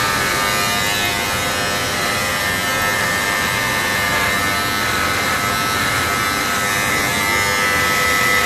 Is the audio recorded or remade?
recorded